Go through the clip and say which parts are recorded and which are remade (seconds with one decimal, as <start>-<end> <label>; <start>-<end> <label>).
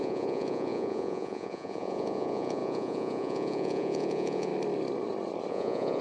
0.0-4.5 remade; 4.5-5.5 recorded; 5.5-6.0 remade